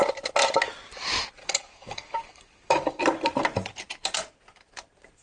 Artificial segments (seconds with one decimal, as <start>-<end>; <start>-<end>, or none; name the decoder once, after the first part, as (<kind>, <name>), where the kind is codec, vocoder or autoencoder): 1.4-3.0 (codec, DAC)